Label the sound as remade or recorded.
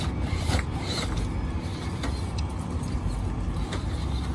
recorded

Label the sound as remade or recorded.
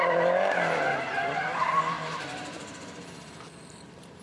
remade